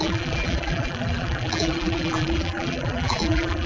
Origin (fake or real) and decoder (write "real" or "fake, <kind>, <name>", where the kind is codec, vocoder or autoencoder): fake, vocoder, BigVGAN v2